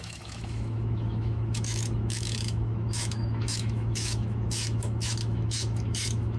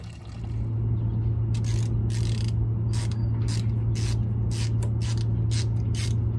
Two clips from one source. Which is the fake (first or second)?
first